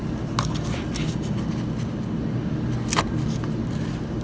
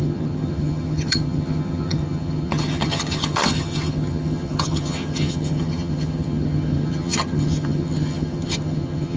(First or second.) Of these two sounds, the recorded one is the first